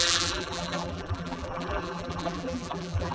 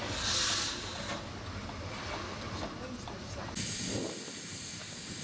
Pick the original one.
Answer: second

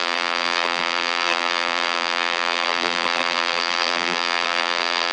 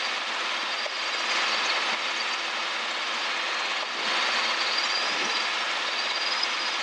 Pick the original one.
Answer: second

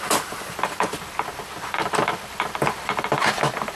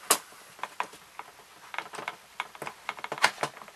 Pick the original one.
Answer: second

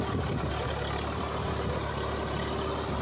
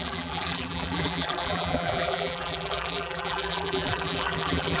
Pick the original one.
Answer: first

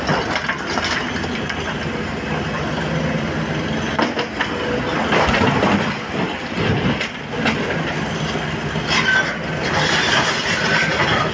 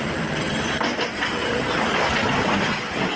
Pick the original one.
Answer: first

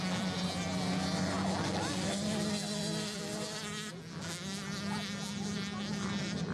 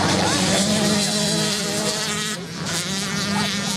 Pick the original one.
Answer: first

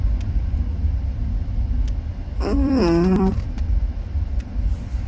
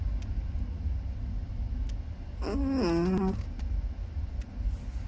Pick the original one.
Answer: second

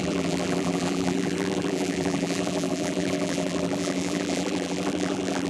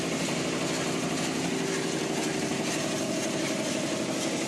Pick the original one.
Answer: second